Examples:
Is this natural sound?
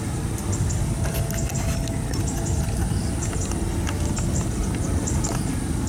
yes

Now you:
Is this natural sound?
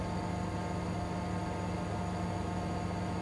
yes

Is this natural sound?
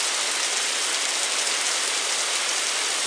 yes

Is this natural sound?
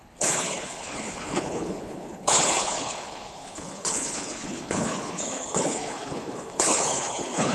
no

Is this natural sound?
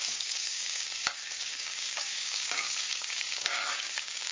no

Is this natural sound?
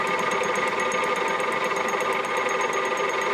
yes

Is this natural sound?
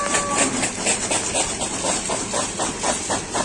yes